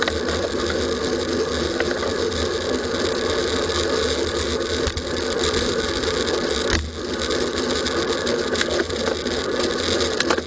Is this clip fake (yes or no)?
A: no